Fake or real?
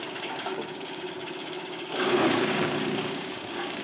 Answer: fake